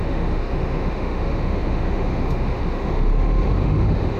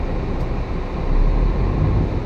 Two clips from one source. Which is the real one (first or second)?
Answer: second